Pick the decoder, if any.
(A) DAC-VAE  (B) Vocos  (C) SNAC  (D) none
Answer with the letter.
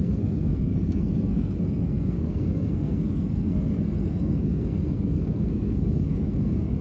C